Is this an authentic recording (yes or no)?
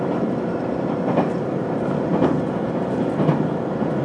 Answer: yes